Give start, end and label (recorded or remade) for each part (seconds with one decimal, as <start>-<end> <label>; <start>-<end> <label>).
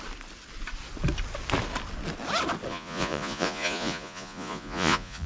0.0-2.7 recorded; 2.7-5.3 remade